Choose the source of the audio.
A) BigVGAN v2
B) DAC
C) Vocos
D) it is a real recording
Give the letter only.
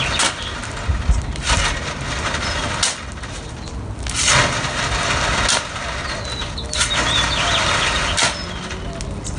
D